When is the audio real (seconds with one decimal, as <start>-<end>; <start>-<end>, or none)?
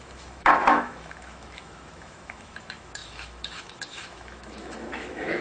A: none